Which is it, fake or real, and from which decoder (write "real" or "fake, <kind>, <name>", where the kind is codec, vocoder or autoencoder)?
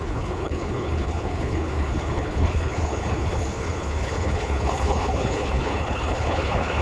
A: fake, codec, HILCodec